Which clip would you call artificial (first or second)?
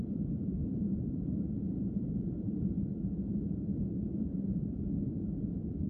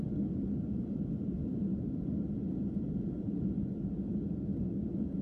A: first